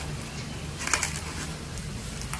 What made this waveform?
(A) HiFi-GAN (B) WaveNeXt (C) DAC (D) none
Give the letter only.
D